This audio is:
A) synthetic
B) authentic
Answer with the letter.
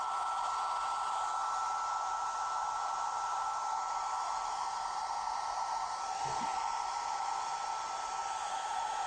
B